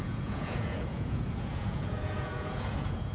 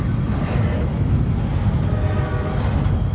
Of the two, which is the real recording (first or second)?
second